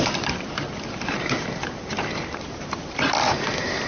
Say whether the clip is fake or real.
fake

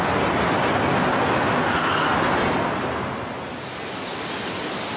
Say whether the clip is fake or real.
real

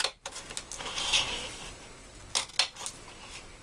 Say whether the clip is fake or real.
real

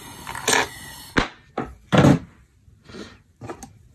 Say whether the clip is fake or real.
real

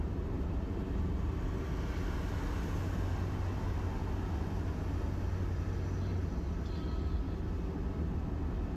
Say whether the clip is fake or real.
real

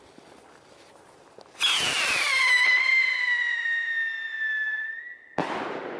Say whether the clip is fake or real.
real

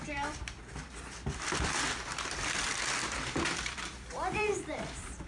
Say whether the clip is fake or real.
fake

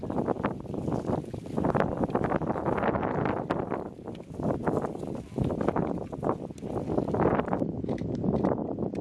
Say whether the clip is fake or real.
real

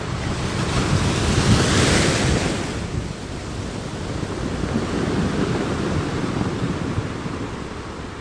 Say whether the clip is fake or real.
fake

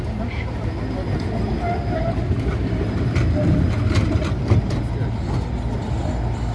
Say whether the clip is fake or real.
real